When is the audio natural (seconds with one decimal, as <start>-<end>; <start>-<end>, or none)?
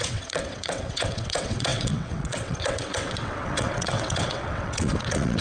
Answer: none